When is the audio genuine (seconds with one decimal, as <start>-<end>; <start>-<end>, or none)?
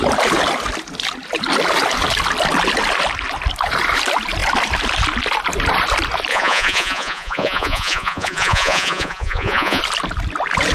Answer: 0.0-6.3; 9.8-10.7